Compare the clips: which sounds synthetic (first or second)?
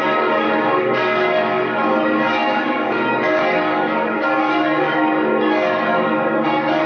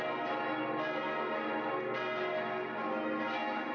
first